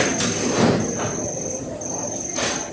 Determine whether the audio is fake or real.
real